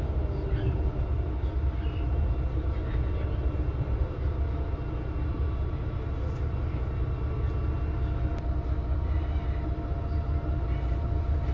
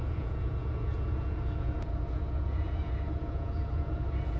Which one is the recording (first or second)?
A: first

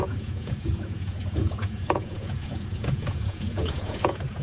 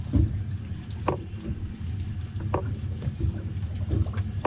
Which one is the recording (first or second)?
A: second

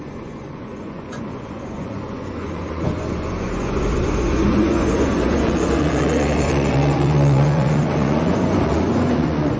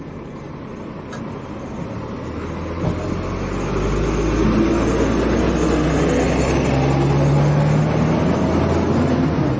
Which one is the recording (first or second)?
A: second